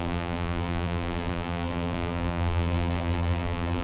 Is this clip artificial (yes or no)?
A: yes